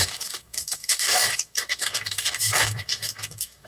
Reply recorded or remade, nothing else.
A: remade